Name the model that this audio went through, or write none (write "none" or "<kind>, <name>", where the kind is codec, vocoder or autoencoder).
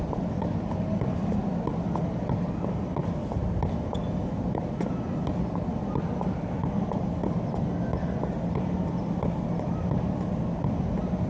none